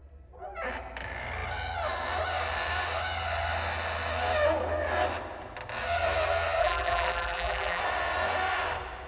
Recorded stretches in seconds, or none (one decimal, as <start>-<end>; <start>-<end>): 0.0-6.6; 7.8-9.1